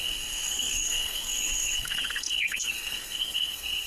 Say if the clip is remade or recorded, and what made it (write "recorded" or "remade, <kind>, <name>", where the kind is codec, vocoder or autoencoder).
remade, codec, SNAC